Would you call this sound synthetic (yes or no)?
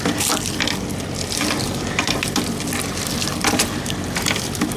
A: yes